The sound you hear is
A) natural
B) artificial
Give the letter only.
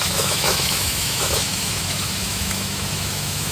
B